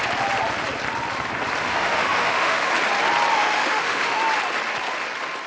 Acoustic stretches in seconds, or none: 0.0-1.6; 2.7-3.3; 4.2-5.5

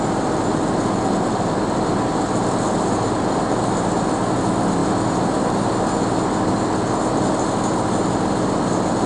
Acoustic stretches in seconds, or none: 0.0-9.1

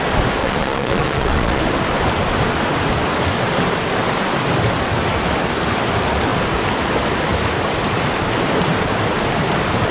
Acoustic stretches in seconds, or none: 0.0-0.4; 1.6-9.9

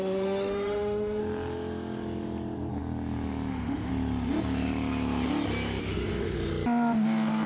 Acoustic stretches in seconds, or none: 1.2-3.5; 3.9-5.8; 6.5-7.5

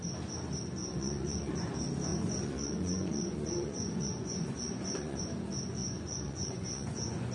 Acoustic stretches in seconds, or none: 0.0-0.8; 1.7-2.1; 5.2-5.8